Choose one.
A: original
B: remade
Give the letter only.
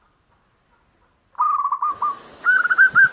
A